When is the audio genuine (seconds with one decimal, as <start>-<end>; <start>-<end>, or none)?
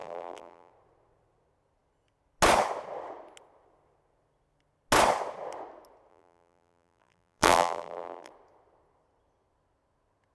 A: 0.7-6.1; 8.3-10.3